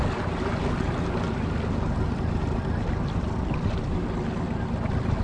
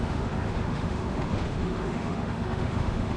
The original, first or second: first